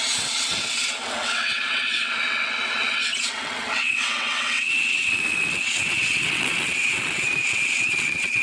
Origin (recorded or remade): remade